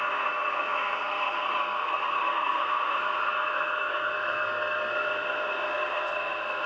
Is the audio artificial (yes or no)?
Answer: yes